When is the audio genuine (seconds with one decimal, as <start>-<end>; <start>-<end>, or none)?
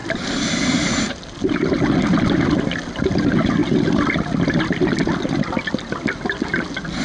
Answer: 0.0-7.0